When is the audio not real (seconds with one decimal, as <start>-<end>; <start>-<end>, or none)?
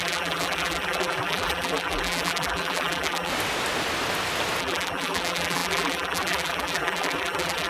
0.0-3.3; 4.6-7.7